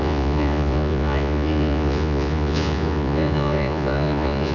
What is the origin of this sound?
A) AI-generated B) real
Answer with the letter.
A